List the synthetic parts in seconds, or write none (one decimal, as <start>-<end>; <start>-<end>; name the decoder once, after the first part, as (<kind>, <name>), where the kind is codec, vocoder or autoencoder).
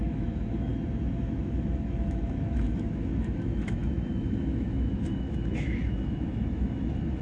0.0-0.7 (autoencoder, DAC-VAE); 1.2-7.2